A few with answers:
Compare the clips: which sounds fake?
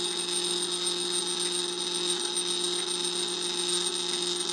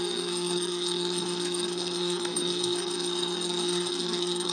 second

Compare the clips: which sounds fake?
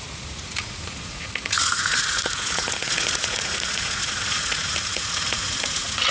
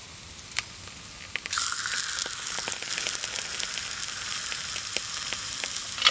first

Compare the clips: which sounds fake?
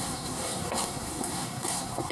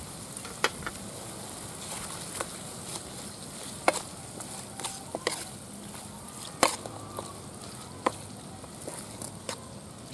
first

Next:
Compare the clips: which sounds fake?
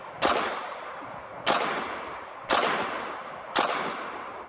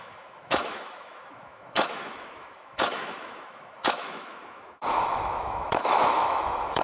second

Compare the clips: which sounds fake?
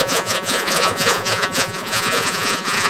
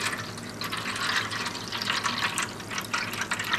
first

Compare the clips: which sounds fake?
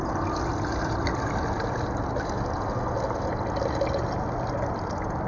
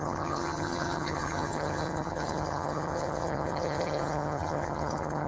second